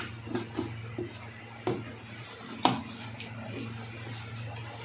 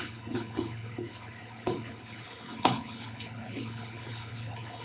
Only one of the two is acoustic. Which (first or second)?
first